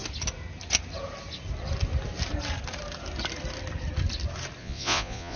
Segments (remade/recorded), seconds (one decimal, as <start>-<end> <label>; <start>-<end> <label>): 0.0-4.6 recorded; 4.6-5.4 remade